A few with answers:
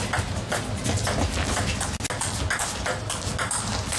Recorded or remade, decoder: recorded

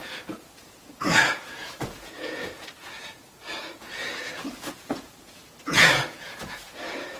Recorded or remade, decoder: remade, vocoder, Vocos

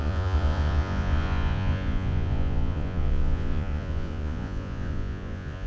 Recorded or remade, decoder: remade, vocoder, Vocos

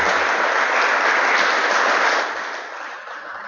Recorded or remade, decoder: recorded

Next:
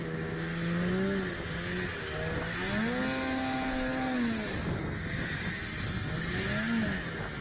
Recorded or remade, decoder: recorded